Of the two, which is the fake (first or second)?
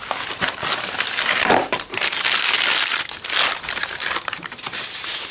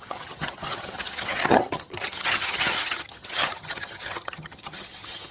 second